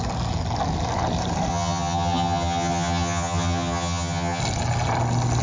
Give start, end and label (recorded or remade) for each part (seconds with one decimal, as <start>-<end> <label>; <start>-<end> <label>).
0.0-1.5 recorded; 1.5-4.4 remade; 4.4-5.4 recorded